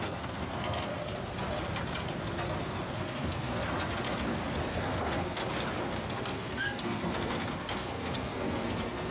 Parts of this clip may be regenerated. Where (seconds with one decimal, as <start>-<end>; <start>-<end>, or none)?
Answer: 0.0-0.9; 2.6-3.6; 4.7-5.4; 6.1-9.1